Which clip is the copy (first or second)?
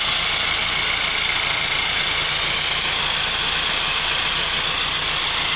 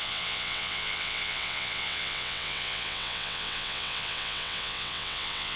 second